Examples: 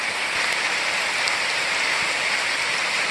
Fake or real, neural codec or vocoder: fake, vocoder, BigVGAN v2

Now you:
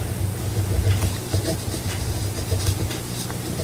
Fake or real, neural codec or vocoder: real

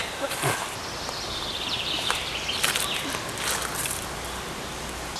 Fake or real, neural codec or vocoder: fake, vocoder, BigVGAN v2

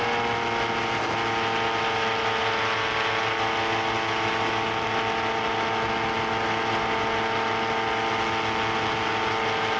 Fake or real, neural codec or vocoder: real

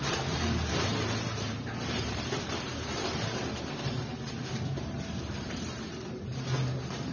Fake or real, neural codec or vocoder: fake, vocoder, BigVGAN v2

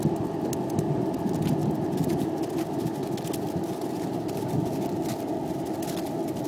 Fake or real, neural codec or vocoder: real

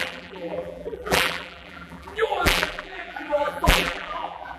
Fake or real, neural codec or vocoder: fake, vocoder, BigVGAN v2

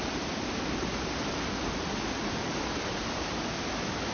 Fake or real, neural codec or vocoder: fake, vocoder, BigVGAN v2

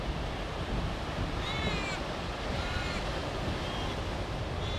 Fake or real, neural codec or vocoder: real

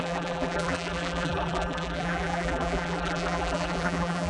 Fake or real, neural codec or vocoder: fake, vocoder, BigVGAN v2